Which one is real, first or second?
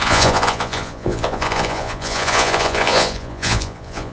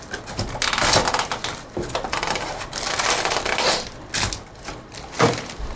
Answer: second